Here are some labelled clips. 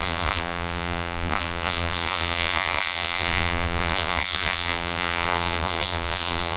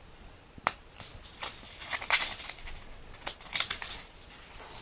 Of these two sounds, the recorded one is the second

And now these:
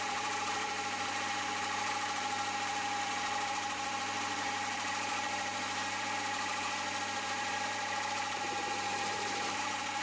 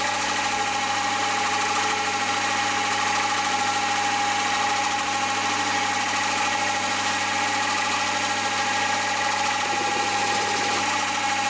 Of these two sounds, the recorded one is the second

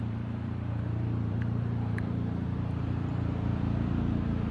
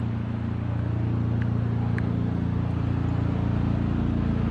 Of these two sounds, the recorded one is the second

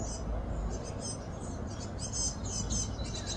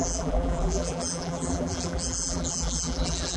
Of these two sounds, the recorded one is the first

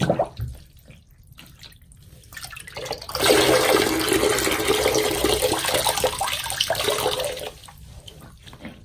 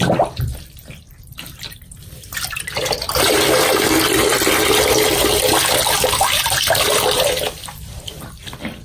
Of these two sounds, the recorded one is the first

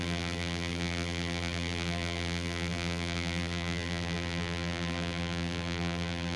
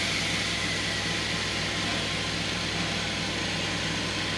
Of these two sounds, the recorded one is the second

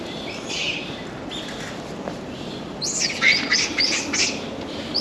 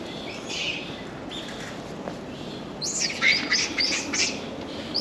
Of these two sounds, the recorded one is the second